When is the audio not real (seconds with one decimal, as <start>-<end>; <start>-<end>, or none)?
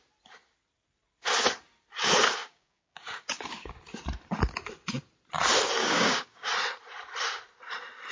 2.4-3.7; 5.8-6.5